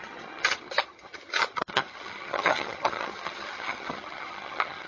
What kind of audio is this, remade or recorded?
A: remade